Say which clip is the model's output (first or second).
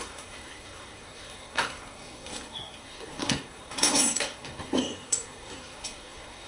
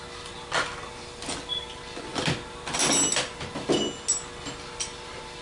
first